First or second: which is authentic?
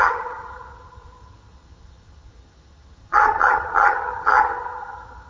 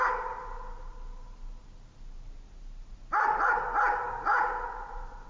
second